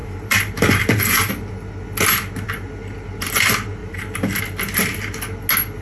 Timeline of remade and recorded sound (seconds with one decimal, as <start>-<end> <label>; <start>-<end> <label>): 0.0-1.3 remade; 1.3-3.8 recorded; 3.8-4.4 remade; 4.4-5.8 recorded